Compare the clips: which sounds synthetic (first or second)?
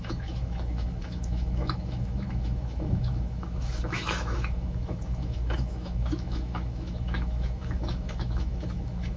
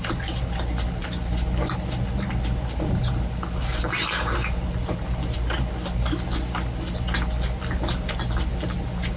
first